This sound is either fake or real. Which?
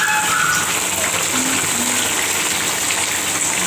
real